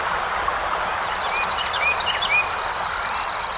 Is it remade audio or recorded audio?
recorded